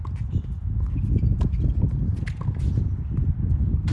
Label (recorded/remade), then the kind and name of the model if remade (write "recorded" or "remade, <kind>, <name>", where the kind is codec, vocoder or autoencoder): recorded